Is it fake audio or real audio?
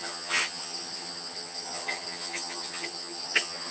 fake